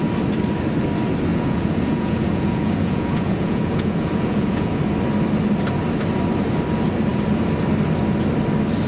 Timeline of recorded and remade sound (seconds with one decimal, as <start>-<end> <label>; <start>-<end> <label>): 0.0-1.3 recorded; 1.3-4.8 remade; 4.8-8.9 recorded